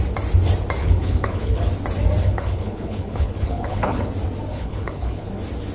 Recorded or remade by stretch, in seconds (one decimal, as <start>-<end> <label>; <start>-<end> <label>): 0.0-0.8 recorded; 0.8-1.7 remade; 1.7-2.2 recorded; 2.2-4.1 remade; 4.1-4.5 recorded; 4.5-5.3 remade; 5.3-5.7 recorded